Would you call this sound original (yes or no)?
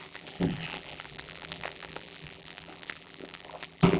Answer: no